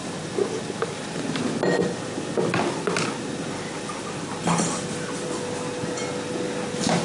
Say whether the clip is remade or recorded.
recorded